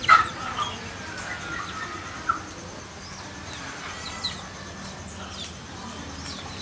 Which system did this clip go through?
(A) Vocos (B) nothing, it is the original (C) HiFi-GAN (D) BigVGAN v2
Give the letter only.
B